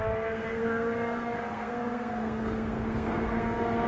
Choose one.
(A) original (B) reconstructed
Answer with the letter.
B